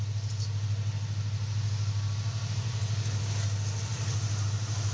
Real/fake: real